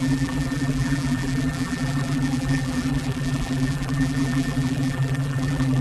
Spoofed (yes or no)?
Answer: yes